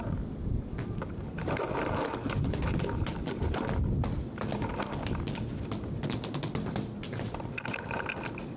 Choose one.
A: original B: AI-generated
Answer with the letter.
A